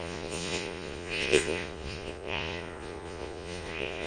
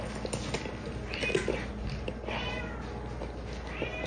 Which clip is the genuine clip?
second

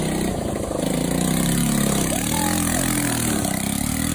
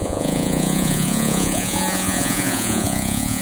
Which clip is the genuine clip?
first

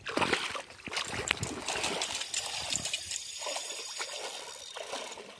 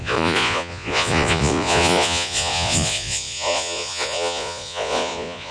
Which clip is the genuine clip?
first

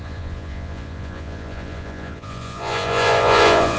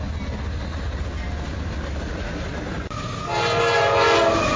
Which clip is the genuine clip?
second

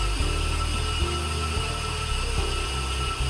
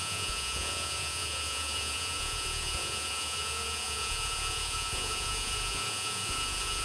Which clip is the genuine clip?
first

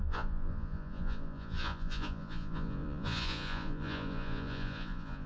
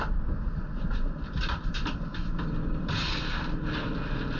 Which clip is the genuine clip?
second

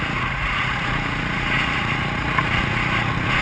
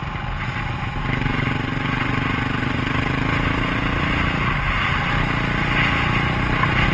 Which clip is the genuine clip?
second